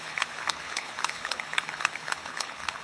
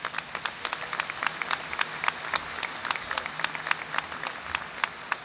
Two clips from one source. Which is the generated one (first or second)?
first